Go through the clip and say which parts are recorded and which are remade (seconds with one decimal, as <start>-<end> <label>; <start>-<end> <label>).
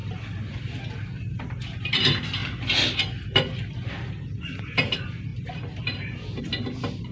0.0-7.1 recorded